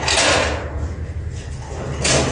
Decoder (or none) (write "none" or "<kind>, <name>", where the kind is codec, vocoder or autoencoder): none